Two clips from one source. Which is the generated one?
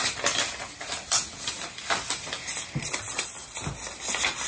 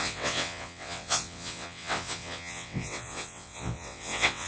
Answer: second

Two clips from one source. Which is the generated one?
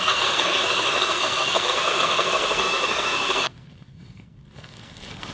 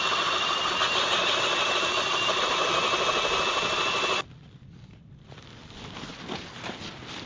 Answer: first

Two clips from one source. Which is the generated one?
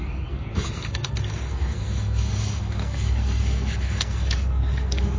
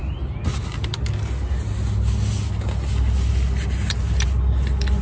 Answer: first